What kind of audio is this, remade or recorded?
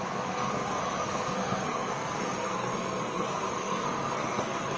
remade